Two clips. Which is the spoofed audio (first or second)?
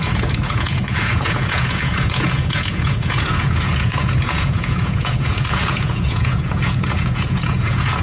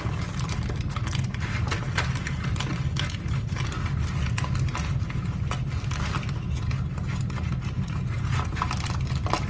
first